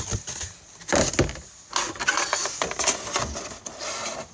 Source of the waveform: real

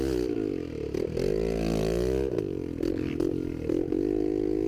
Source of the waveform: real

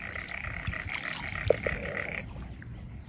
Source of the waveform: real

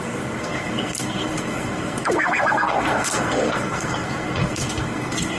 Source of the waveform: fake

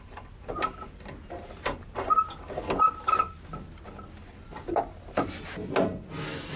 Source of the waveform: real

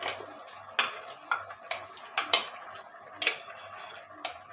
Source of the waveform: real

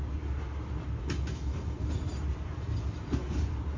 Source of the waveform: real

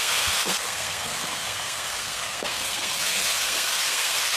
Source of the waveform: fake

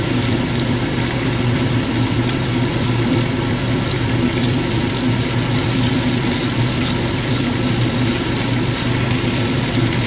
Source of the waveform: fake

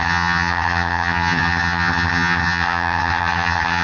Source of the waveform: fake